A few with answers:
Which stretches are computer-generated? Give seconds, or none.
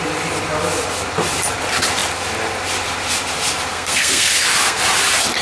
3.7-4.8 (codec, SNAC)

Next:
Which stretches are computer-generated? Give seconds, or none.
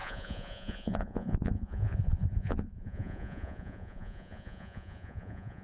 0.0-5.6 (vocoder, Vocos)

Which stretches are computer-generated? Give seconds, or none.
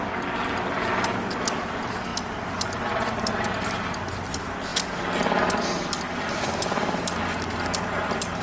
none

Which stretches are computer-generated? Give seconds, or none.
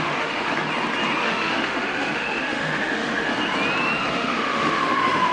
0.0-0.5 (autoencoder, DAC-VAE); 1.2-3.3; 4.1-5.3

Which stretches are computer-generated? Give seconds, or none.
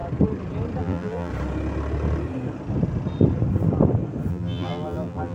0.8-1.3 (vocoder, BigVGAN v2); 4.3-5.3